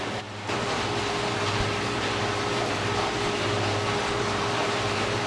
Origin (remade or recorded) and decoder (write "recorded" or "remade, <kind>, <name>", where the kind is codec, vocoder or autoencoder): recorded